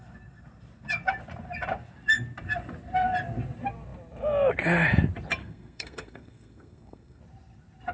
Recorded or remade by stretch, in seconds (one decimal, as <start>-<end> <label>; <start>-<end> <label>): 0.0-5.4 recorded; 5.4-7.2 remade; 7.2-7.9 recorded